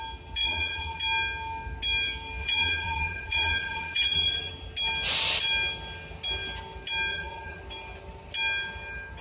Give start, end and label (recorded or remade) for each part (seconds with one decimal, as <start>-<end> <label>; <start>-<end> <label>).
0.0-0.4 recorded; 0.4-1.0 remade; 1.0-2.4 recorded; 2.4-4.5 remade; 4.5-7.1 recorded; 7.1-7.6 remade; 7.6-9.2 recorded